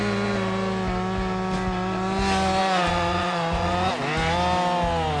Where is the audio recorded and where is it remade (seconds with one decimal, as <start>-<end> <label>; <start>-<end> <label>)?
0.0-2.6 recorded; 2.6-3.9 remade; 3.9-5.2 recorded